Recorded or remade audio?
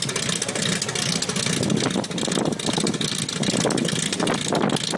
recorded